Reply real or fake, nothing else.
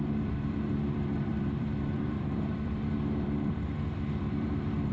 fake